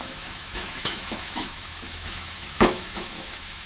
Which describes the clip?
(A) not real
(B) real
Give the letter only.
A